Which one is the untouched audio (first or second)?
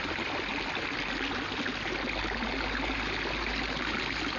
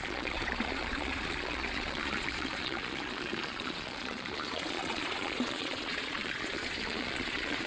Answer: first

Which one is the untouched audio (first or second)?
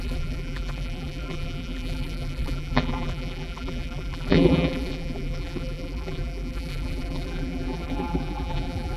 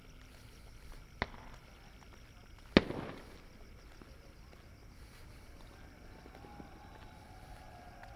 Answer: second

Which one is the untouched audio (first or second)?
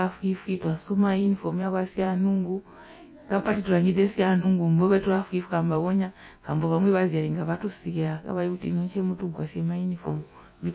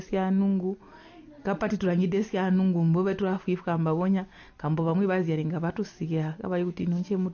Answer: second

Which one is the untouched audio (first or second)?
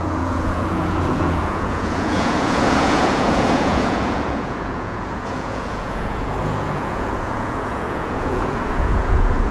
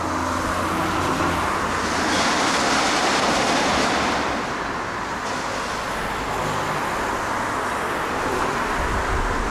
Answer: second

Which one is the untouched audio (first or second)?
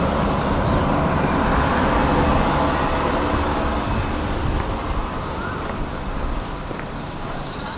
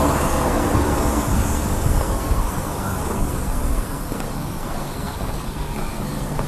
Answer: first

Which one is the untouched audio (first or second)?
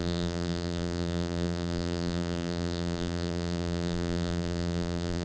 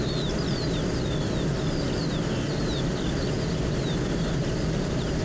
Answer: second